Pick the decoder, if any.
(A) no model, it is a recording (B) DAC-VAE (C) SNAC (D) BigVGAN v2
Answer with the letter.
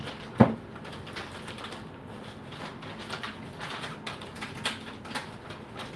A